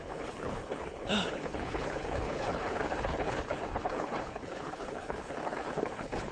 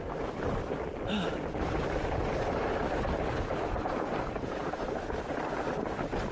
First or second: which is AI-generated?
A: first